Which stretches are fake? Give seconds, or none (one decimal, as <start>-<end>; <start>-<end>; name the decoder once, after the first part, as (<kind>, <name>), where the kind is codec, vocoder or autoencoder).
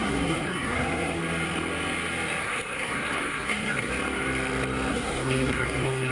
0.0-1.2 (codec, SNAC); 2.4-3.9; 4.9-6.1